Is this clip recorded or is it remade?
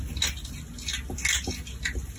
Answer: recorded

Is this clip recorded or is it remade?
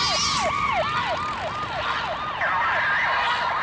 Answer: recorded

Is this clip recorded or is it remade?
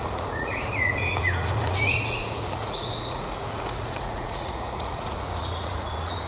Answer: remade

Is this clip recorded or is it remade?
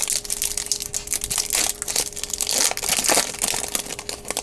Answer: recorded